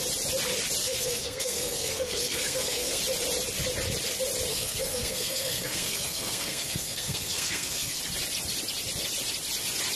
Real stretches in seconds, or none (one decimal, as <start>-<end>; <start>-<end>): 0.0-0.8; 3.0-4.5; 8.0-10.0